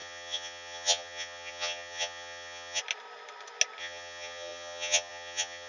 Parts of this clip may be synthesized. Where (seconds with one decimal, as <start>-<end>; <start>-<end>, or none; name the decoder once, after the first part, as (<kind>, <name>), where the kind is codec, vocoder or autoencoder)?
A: 0.0-2.8 (vocoder, HiFi-GAN); 3.8-5.7